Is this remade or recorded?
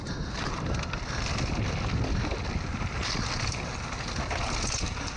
recorded